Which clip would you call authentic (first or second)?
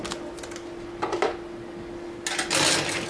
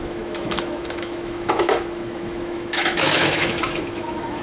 first